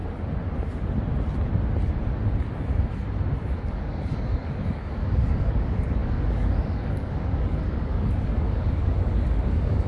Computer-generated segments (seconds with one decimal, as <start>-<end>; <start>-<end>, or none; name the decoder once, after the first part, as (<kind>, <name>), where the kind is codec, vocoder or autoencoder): 3.6-9.9 (codec, DAC)